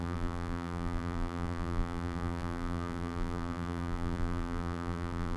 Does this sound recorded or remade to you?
remade